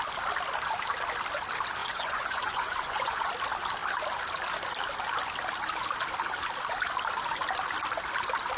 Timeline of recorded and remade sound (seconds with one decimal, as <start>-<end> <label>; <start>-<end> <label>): 0.0-1.8 recorded; 1.8-3.3 remade; 3.3-8.6 recorded